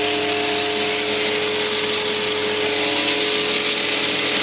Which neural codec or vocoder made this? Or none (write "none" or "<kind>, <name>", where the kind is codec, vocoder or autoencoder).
none